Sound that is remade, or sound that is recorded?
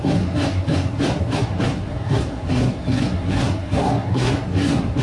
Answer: remade